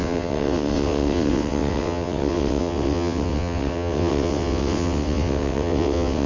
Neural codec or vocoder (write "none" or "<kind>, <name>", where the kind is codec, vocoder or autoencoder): vocoder, WaveNeXt